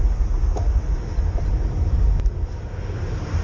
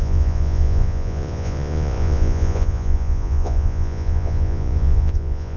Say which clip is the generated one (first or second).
second